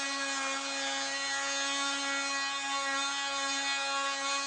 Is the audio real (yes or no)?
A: yes